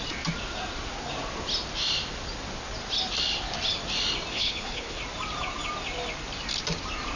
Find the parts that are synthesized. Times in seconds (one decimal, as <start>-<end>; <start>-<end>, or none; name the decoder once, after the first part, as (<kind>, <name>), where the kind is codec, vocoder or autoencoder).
4.3-5.0 (codec, HILCodec)